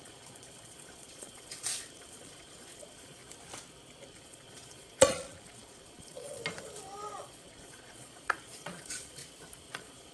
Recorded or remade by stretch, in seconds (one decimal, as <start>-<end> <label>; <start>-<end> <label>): 0.0-3.2 remade; 3.2-4.1 recorded; 4.1-6.4 remade; 6.4-7.2 recorded; 7.2-9.2 remade; 9.2-9.7 recorded; 9.7-10.1 remade